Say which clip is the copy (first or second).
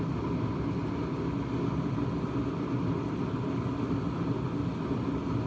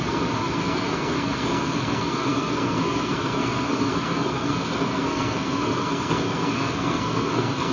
second